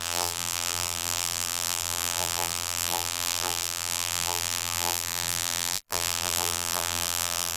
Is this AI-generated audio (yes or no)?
yes